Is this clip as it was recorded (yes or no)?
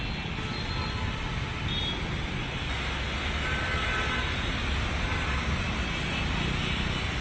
yes